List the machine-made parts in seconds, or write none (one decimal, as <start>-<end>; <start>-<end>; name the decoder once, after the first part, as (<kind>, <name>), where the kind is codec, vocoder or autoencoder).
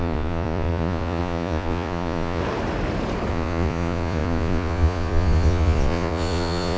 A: 0.0-2.4 (vocoder, Vocos); 3.3-6.8